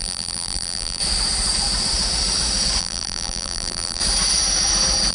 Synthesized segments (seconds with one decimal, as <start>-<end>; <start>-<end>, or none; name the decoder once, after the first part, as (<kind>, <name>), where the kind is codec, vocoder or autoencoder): 0.0-1.0 (vocoder, BigVGAN v2); 2.8-4.0